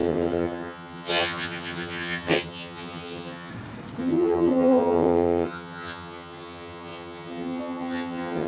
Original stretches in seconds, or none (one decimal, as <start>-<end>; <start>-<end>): 3.5-4.0